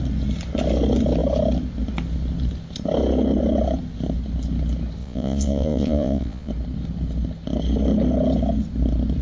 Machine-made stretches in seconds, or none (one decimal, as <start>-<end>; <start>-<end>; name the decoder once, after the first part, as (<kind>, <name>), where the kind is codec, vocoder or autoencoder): 5.0-6.5 (vocoder, Vocos)